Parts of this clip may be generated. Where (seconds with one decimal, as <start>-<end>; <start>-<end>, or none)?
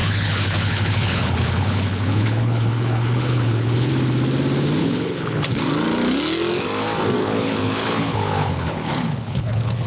0.0-3.9; 4.8-5.6; 7.2-9.9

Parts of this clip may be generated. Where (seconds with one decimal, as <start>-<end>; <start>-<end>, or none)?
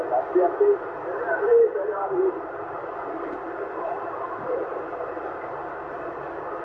1.5-5.5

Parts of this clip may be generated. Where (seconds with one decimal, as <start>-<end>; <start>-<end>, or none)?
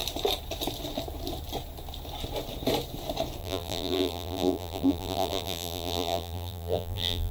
3.4-7.3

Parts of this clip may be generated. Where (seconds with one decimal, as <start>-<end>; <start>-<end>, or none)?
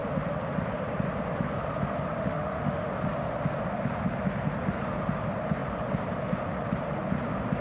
2.2-2.9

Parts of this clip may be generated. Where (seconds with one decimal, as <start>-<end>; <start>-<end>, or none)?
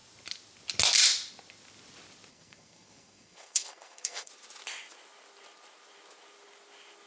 2.3-4.3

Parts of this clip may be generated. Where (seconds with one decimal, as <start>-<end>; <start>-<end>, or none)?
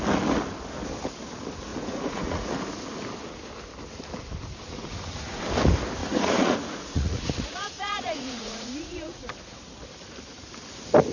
1.7-2.5; 4.8-5.4; 6.0-9.3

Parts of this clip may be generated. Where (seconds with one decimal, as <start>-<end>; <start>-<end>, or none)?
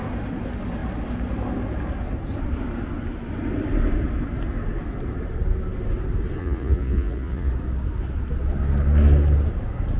6.4-7.5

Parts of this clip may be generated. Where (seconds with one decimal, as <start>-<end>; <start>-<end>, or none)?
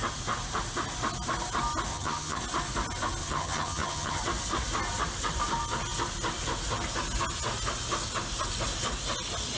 1.9-2.4; 3.2-4.2